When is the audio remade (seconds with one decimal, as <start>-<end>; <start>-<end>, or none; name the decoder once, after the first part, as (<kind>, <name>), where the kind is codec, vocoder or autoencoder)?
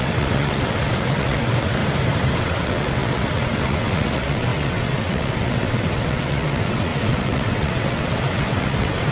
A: 0.0-1.8 (vocoder, WaveNeXt); 2.4-9.1